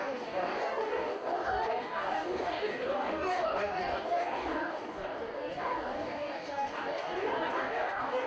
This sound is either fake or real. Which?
fake